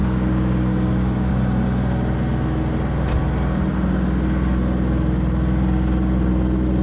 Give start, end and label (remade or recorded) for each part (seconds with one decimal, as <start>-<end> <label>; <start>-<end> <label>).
0.0-1.3 remade; 1.3-6.8 recorded